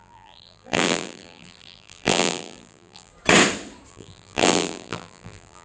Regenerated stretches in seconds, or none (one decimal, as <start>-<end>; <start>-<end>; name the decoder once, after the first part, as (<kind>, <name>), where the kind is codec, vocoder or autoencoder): 0.0-3.1 (vocoder, BigVGAN v2); 3.9-5.6